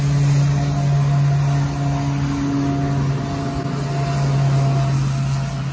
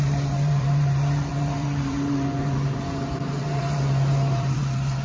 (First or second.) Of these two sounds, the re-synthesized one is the second